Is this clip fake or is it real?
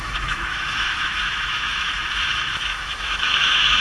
fake